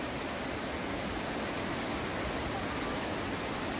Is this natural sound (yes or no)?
yes